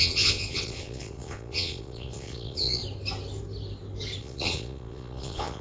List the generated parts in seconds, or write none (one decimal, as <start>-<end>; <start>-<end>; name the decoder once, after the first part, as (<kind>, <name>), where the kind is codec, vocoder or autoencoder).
0.0-2.8 (vocoder, Vocos); 4.2-5.6